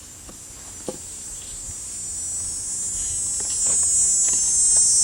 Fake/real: real